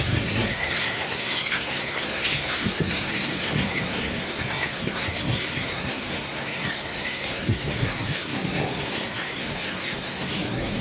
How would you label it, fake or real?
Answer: fake